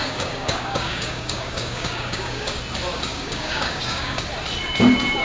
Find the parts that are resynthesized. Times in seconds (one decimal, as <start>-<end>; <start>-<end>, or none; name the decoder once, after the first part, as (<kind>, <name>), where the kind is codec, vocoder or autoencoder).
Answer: 0.0-2.6 (codec, DAC); 3.1-4.2